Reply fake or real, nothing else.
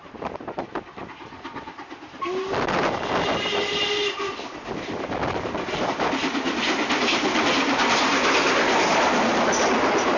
real